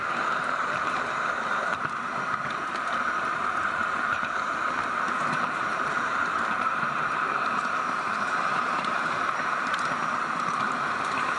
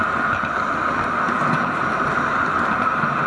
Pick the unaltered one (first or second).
second